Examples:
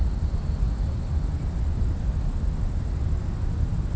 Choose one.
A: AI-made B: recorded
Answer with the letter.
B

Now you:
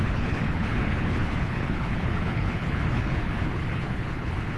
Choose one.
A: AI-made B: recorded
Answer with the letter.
A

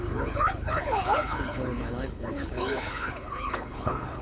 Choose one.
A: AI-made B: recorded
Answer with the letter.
A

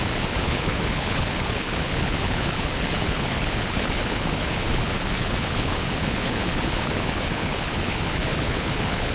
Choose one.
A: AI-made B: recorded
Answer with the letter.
A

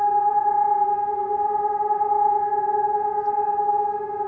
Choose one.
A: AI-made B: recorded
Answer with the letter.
B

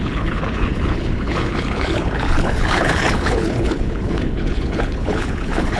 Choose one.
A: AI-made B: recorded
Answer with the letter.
A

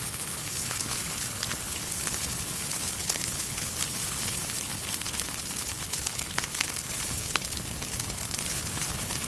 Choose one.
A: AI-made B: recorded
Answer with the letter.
A